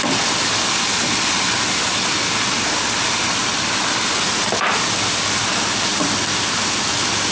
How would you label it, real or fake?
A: real